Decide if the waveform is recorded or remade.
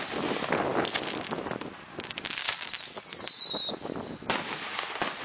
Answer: recorded